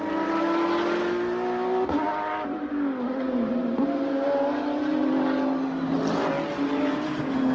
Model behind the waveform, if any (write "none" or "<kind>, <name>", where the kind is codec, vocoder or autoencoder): none